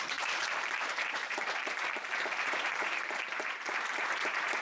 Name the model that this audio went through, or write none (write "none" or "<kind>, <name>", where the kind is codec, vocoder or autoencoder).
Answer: vocoder, BigVGAN v2